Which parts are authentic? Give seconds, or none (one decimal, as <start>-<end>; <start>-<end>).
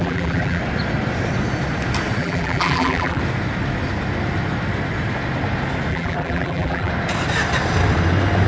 0.6-2.2; 3.2-5.9; 6.9-8.5